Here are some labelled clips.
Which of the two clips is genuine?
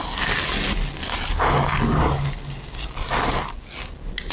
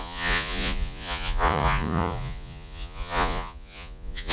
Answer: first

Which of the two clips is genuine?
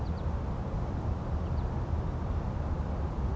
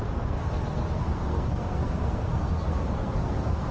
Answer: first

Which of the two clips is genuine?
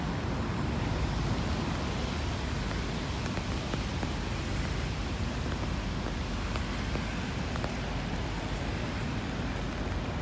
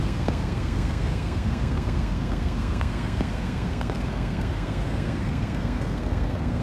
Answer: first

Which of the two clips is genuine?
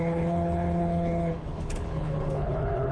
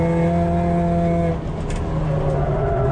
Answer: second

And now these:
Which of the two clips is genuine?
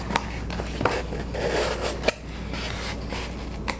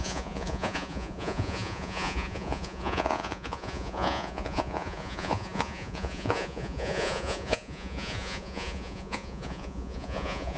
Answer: first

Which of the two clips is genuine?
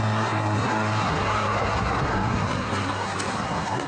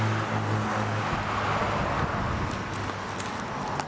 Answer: second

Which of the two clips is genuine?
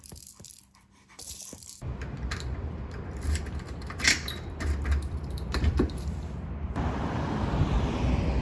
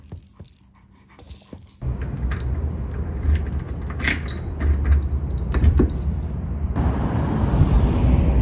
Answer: second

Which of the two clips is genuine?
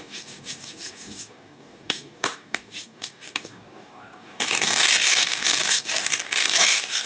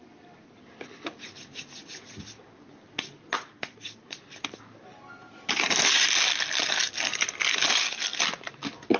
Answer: second